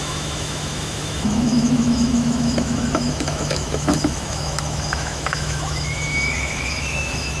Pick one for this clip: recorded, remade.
remade